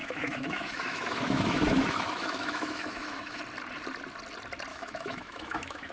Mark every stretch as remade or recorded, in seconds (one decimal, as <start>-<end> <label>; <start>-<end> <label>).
0.0-3.4 remade; 3.4-4.7 recorded; 4.7-5.9 remade